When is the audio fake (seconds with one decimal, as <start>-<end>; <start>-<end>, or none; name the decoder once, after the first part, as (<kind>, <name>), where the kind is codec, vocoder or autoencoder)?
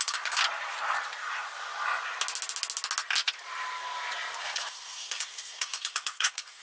0.0-0.4 (codec, SNAC); 4.4-6.6